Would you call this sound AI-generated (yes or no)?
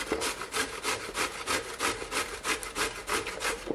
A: no